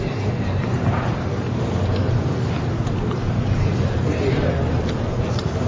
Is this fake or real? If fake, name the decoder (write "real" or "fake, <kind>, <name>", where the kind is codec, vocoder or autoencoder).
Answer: real